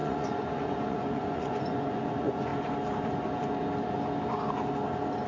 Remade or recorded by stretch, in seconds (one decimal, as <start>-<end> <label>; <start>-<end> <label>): 0.0-2.5 remade; 2.5-5.3 recorded